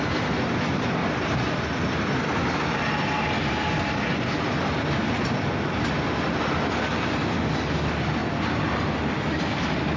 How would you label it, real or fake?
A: real